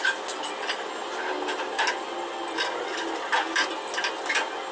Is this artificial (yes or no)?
no